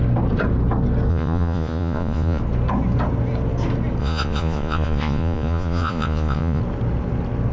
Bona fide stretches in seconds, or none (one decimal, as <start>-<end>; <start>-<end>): 0.0-1.1; 2.4-4.0; 6.6-7.5

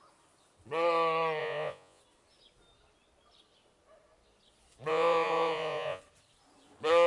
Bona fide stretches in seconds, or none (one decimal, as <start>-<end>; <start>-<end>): 0.0-1.4; 2.0-4.9; 6.0-7.1